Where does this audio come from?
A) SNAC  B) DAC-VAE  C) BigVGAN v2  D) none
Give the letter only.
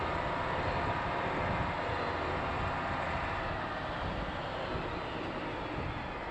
D